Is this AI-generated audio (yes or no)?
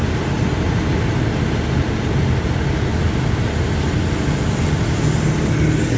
no